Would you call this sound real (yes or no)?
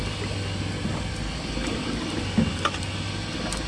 yes